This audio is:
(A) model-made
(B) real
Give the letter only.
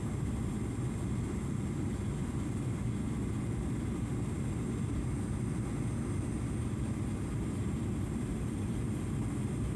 B